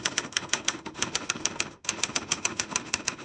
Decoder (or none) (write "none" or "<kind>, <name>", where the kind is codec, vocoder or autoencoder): autoencoder, DAC-VAE